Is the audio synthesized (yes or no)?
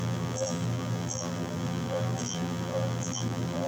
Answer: yes